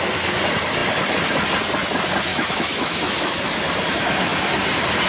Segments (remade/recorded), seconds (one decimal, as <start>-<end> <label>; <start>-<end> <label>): 0.0-2.3 recorded; 2.3-3.4 remade; 3.4-5.1 recorded